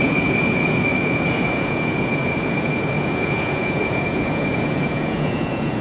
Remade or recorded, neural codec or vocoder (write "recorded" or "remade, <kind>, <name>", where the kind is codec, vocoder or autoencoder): remade, vocoder, Vocos